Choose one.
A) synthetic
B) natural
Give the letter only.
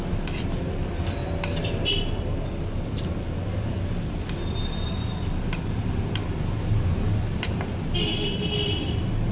B